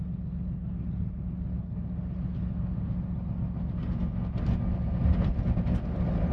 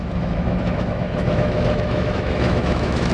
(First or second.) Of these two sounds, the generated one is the second